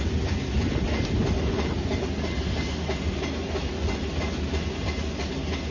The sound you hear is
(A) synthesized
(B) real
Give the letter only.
B